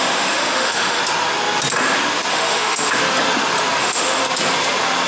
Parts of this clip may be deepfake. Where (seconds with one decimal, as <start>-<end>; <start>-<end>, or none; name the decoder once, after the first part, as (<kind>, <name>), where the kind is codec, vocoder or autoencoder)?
0.0-1.0 (autoencoder, DAC-VAE); 2.3-3.0; 3.8-4.2